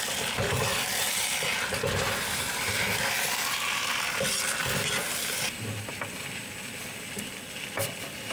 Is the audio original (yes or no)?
yes